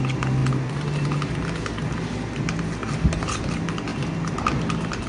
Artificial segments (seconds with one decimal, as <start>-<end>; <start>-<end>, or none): none